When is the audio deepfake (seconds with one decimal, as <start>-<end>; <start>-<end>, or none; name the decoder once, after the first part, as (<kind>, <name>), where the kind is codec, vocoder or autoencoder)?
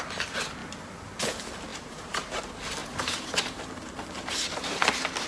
1.7-2.4 (vocoder, BigVGAN v2); 2.8-3.6